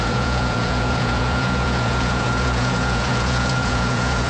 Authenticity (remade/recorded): remade